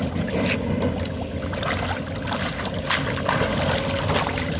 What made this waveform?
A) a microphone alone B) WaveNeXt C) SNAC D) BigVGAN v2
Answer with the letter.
A